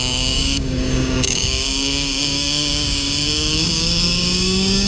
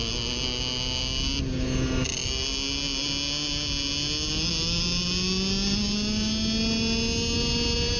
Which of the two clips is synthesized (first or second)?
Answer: first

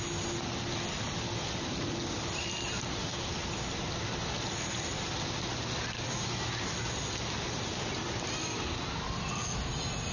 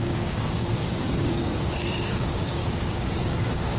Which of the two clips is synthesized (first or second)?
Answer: second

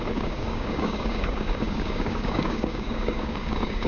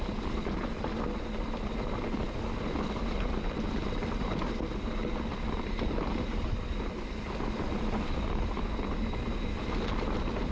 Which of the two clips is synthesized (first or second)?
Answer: first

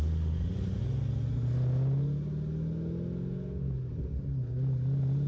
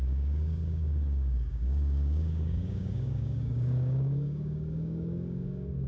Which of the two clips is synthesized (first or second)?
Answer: second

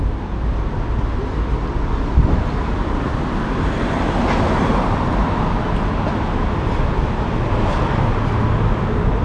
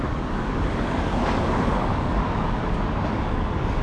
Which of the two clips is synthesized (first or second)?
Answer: second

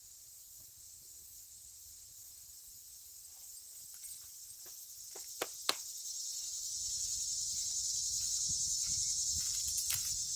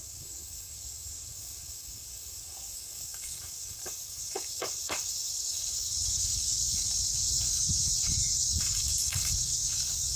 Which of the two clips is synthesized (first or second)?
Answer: second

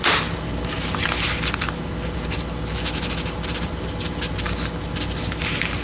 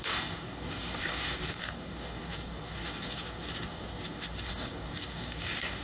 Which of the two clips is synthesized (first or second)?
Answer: second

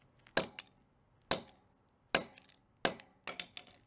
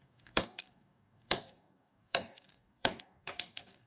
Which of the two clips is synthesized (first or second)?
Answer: second